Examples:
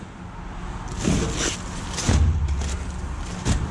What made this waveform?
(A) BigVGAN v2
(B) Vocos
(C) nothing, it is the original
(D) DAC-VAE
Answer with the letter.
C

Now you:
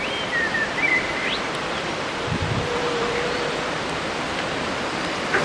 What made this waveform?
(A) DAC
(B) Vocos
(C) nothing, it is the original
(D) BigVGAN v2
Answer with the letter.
D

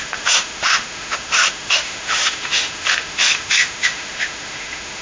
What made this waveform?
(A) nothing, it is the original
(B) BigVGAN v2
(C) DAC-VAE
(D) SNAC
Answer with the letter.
C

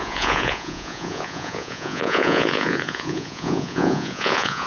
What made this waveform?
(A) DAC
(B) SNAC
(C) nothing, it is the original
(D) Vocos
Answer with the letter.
D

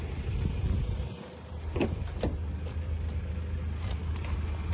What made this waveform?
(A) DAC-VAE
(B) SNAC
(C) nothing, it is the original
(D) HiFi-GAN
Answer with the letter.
C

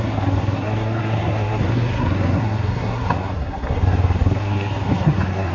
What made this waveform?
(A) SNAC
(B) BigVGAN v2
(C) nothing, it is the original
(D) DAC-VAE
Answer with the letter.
A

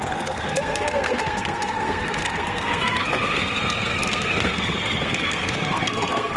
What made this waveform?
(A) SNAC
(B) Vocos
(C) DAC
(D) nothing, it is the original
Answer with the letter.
A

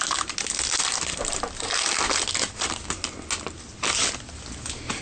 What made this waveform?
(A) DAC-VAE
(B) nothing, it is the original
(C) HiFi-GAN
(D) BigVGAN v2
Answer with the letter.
B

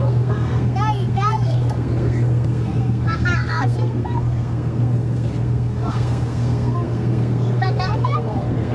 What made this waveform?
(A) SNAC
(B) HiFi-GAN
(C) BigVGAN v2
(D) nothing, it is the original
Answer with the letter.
A